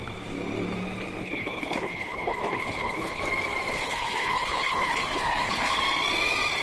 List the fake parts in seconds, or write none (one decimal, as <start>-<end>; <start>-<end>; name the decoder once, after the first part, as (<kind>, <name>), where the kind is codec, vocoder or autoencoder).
1.2-3.2 (codec, HILCodec); 3.7-5.8